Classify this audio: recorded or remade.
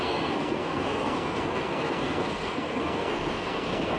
remade